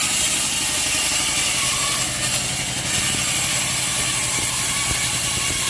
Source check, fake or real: real